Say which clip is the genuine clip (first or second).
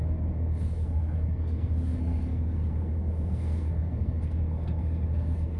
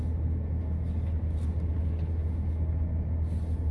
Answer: second